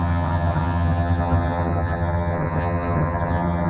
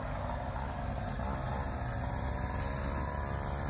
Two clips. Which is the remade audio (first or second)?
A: first